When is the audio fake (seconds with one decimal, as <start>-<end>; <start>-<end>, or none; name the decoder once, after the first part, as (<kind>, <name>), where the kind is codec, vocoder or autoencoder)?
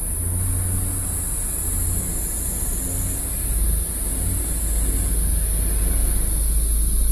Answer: none